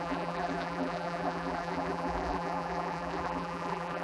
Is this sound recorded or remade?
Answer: remade